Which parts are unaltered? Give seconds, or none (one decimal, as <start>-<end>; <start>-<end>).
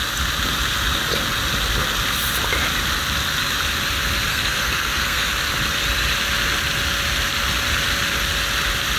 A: 0.0-4.3; 5.3-9.0